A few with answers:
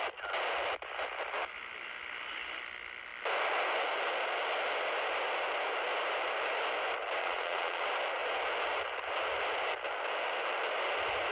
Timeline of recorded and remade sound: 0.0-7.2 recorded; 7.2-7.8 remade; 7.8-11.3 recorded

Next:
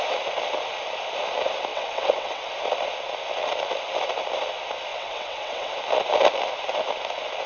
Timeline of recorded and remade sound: 0.0-1.7 recorded; 1.7-2.5 remade; 2.5-4.9 recorded; 4.9-5.7 remade; 5.7-7.5 recorded

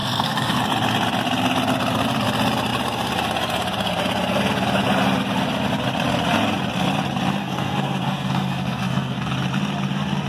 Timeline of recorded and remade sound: 0.0-0.6 remade; 0.6-7.4 recorded; 7.4-9.3 remade; 9.3-10.3 recorded

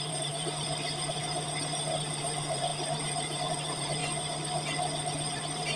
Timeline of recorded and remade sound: 0.0-1.2 remade; 1.2-2.1 recorded; 2.1-4.0 remade; 4.0-5.3 recorded; 5.3-5.8 remade

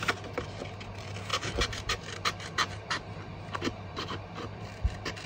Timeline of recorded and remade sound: 0.0-1.3 recorded; 1.3-4.5 remade; 4.5-5.3 recorded

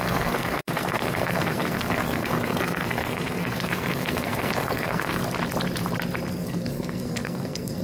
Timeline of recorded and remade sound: 0.0-5.2 remade; 5.2-6.3 recorded; 6.3-7.8 remade

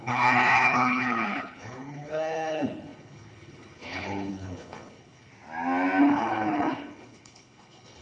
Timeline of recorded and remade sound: 0.0-5.3 remade; 5.3-6.0 recorded; 6.0-8.0 remade